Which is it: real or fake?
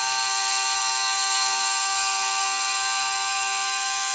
fake